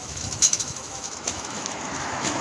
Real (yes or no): no